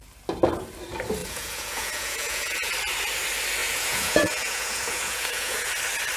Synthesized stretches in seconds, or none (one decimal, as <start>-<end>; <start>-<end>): 1.2-2.7; 3.6-5.7